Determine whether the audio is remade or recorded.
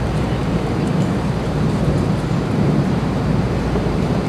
remade